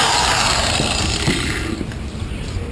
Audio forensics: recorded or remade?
recorded